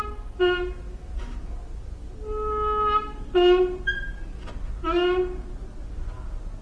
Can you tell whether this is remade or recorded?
recorded